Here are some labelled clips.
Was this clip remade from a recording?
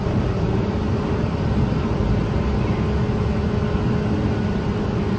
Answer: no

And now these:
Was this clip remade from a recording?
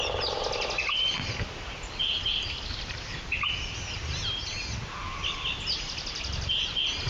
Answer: no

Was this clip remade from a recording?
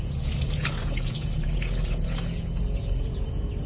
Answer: yes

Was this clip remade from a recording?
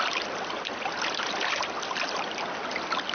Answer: no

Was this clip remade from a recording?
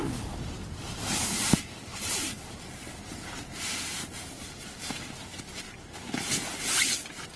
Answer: no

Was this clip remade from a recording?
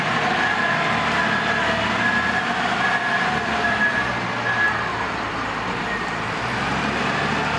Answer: yes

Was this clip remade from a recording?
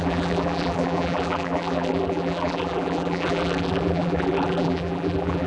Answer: yes